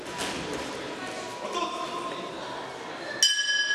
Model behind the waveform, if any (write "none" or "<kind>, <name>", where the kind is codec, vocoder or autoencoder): none